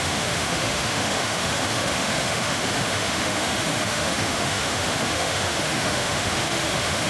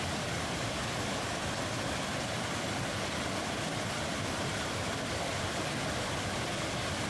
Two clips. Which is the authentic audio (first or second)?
second